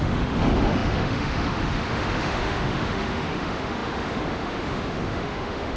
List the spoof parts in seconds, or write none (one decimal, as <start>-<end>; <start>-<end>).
0.0-5.8